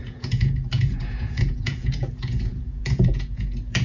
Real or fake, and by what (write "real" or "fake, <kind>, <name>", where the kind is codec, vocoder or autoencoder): fake, vocoder, Vocos